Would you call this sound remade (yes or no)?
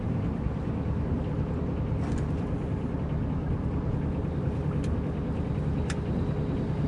no